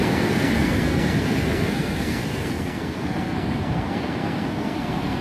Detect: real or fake fake